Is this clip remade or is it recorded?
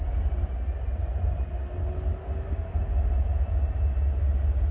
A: recorded